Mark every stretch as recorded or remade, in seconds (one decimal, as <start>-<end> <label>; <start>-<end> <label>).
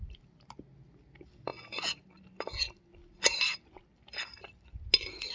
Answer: 0.0-5.3 recorded